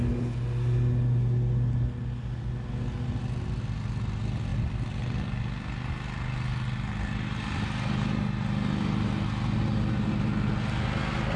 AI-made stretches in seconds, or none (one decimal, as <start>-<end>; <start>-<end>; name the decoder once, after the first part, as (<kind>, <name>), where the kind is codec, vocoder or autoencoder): none